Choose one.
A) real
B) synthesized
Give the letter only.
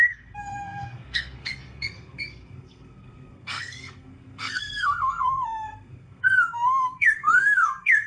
B